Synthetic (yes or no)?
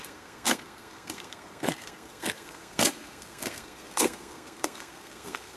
yes